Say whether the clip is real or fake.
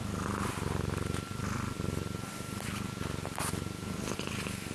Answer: real